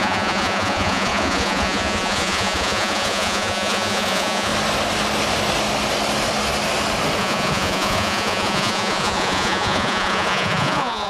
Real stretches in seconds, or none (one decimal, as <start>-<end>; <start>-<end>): 4.5-7.2

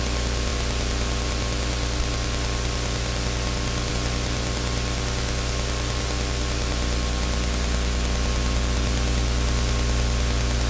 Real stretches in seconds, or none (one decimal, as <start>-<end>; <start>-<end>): 0.0-10.7

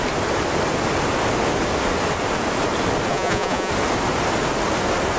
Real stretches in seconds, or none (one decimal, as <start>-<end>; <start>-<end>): 0.0-3.1; 3.7-5.2

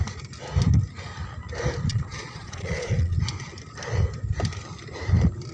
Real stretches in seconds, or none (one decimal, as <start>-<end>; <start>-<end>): 0.0-1.9; 3.2-5.5

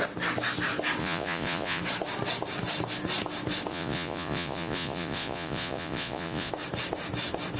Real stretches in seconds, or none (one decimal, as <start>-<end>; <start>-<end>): 0.0-1.0; 1.8-3.7; 6.5-7.6

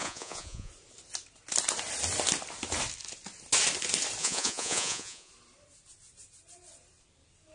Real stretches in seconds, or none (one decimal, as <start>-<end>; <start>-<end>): 0.7-4.2; 5.3-7.5